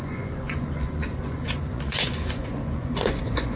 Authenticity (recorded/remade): remade